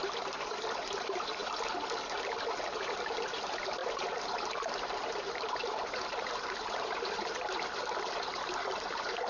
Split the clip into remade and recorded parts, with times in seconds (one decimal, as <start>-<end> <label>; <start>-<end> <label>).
0.0-9.3 recorded